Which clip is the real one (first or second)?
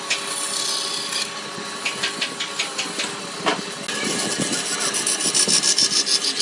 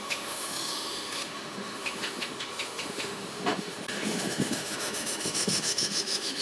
first